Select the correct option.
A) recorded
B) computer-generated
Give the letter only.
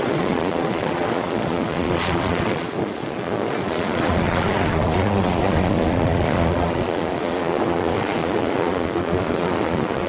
B